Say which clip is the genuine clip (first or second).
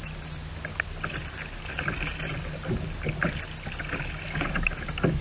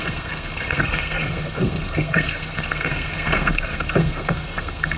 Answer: first